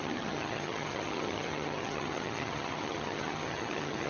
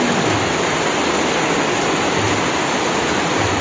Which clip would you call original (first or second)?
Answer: second